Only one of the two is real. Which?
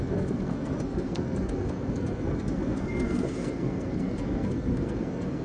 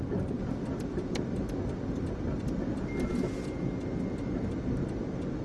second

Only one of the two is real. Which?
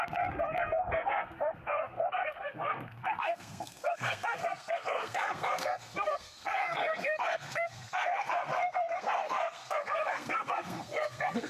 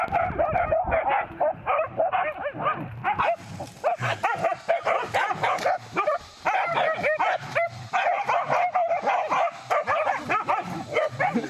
second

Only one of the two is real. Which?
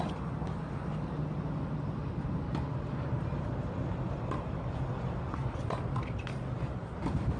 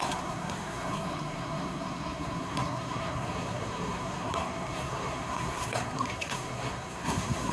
first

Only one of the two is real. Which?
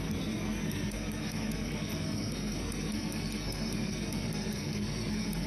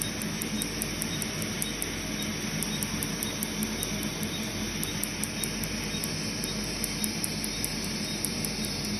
second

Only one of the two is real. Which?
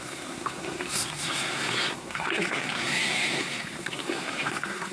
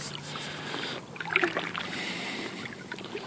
second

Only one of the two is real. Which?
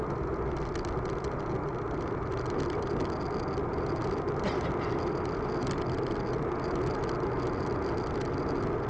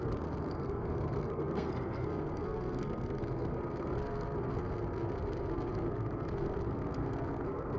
first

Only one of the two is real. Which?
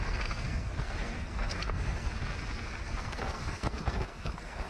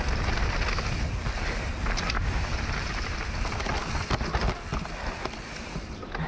second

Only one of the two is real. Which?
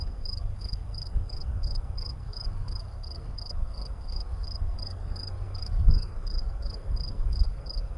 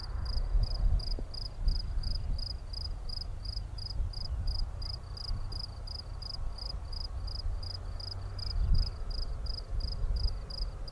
second